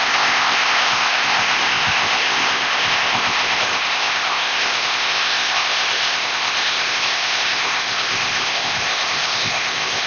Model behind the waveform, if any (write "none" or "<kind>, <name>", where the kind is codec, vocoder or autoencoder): codec, ZipCodec